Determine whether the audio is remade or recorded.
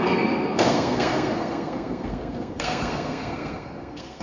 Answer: remade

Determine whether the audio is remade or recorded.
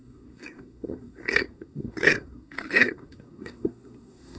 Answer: remade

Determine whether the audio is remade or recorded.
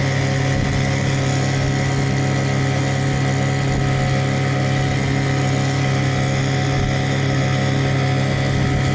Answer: recorded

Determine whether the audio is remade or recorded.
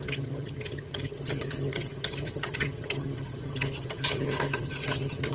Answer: remade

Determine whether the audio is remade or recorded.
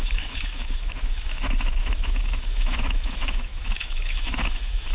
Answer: remade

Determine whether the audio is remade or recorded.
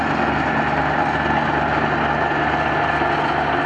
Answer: recorded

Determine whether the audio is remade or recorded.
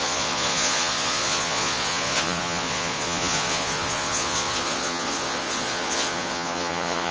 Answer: remade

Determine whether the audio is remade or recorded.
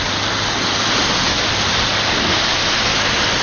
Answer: recorded